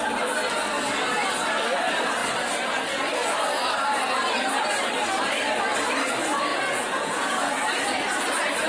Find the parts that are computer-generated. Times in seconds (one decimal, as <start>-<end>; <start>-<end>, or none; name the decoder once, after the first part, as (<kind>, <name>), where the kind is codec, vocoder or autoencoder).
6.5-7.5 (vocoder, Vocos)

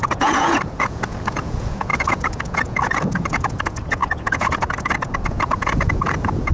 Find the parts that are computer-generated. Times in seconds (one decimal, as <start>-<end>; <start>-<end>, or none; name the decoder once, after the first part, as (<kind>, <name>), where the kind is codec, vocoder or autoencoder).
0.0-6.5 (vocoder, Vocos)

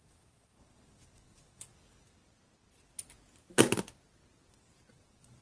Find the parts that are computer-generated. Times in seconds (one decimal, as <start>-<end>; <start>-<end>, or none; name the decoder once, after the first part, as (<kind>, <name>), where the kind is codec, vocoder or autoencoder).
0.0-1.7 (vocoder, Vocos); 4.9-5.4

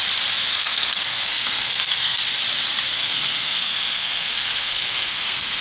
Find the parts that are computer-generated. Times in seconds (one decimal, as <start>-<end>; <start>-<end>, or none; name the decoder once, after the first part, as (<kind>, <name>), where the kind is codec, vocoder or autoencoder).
0.5-2.2 (codec, SNAC); 2.9-5.6